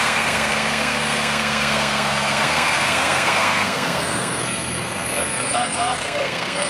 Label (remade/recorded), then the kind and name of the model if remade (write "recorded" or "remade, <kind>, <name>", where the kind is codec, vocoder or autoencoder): remade, codec, SNAC